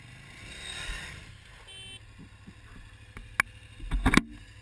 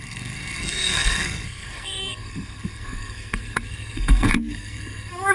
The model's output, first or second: second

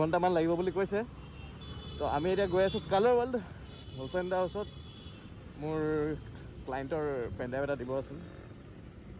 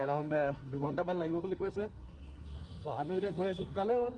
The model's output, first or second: second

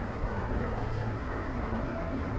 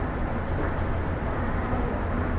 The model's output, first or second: first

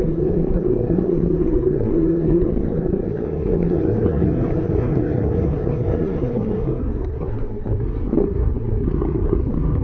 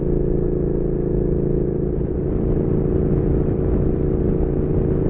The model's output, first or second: first